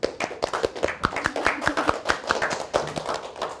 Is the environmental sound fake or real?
real